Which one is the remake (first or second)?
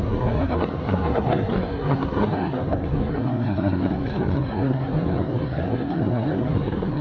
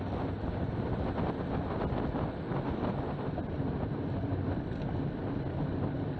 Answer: first